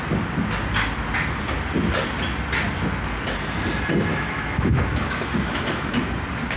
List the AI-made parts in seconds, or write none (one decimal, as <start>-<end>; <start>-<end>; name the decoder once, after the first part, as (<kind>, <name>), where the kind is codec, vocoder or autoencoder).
4.1-5.9 (autoencoder, DAC-VAE)